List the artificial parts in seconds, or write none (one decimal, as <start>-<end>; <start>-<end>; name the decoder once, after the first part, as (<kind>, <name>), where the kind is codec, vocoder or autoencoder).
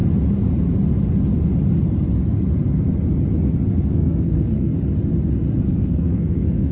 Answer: 3.7-4.7 (codec, SNAC); 5.6-6.7